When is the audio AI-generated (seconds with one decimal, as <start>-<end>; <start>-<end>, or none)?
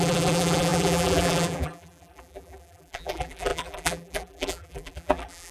0.0-5.5